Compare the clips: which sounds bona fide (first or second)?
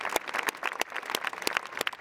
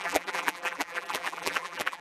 first